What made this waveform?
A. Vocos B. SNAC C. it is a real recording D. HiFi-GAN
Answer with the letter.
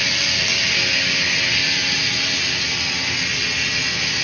C